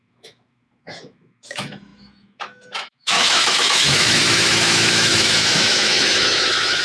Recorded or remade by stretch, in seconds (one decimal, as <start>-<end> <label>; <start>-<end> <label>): 0.0-6.8 remade